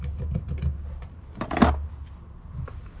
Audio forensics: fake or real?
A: real